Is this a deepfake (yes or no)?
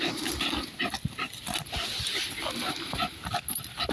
no